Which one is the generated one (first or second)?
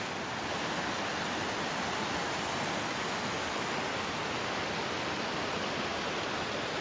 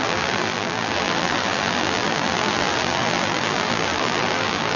second